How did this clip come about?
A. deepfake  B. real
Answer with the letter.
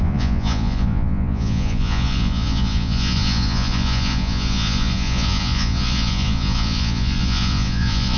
A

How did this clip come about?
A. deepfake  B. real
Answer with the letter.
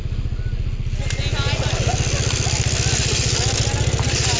B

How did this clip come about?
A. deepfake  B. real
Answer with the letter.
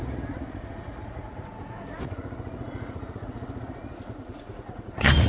A